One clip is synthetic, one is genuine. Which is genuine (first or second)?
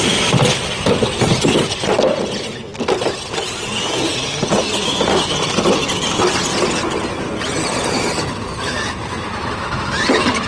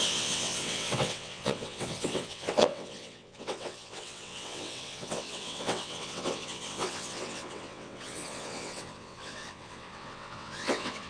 first